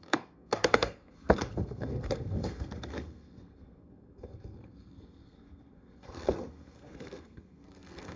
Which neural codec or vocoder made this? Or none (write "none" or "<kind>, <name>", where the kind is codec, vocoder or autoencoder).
codec, SNAC